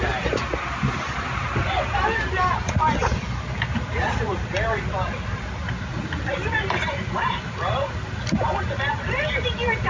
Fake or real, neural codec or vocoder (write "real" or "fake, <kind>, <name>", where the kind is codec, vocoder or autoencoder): real